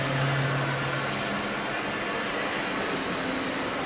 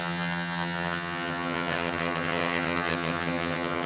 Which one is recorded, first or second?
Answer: first